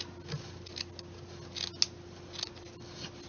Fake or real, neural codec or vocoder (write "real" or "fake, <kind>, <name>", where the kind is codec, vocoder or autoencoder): real